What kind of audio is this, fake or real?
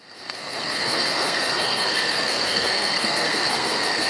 fake